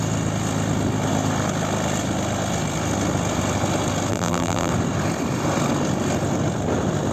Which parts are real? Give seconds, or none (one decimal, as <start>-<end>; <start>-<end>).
0.0-4.1; 4.7-7.1